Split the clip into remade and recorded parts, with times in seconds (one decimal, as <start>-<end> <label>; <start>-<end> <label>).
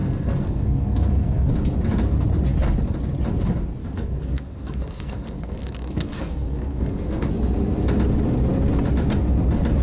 0.0-1.5 remade; 1.5-3.8 recorded; 3.8-7.3 remade; 7.3-9.8 recorded